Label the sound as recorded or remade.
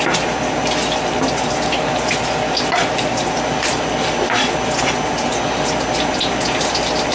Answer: recorded